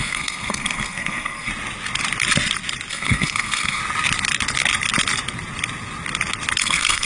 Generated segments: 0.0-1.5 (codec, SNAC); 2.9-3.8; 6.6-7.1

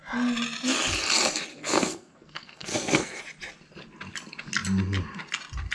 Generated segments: 1.5-3.2 (codec, SNAC)

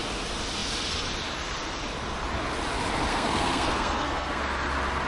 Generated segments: 3.1-4.4 (codec, SNAC)

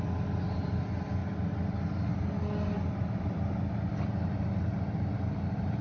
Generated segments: none

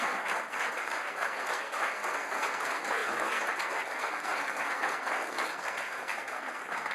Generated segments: 0.0-6.9 (codec, SNAC)

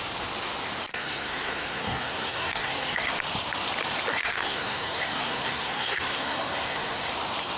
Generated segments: 0.9-3.1 (codec, SNAC); 4.1-7.1

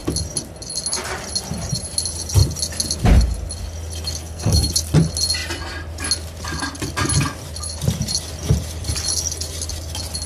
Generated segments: 4.2-4.7 (codec, SNAC)

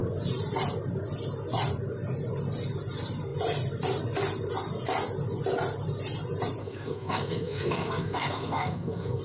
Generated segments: 6.6-9.2 (codec, SNAC)